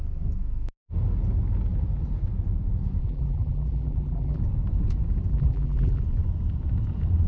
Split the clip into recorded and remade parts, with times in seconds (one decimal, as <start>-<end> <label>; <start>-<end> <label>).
0.0-3.0 recorded; 3.0-4.4 remade; 4.4-5.3 recorded; 5.3-6.0 remade; 6.0-7.3 recorded